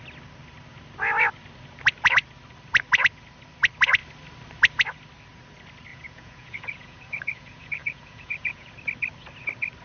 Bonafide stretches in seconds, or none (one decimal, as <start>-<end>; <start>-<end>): 0.0-5.9; 8.7-9.8